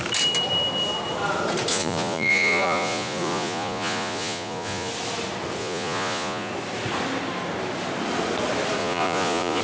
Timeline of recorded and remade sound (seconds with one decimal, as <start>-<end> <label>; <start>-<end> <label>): 0.0-1.7 recorded; 1.7-4.9 remade; 4.9-5.6 recorded; 5.6-6.5 remade; 6.5-8.8 recorded; 8.8-9.6 remade